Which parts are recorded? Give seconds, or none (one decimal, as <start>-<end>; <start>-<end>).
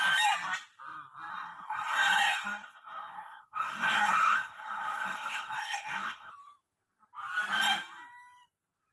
0.0-1.3; 6.3-8.9